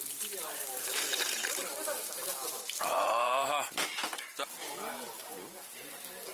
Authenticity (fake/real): fake